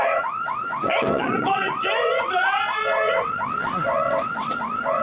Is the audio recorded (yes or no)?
no